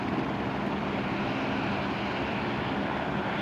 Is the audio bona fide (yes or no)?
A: yes